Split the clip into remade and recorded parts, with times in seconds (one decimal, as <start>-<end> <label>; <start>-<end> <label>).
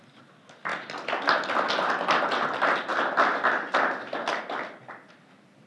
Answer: 0.0-5.7 recorded